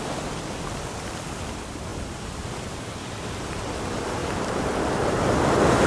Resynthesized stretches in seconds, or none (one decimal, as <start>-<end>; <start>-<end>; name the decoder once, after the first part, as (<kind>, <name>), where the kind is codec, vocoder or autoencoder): 0.0-5.9 (vocoder, BigVGAN v2)